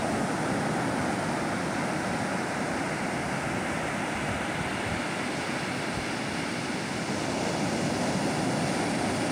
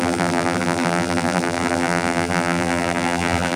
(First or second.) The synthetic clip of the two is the second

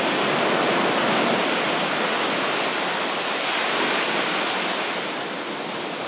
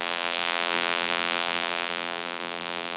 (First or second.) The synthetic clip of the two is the second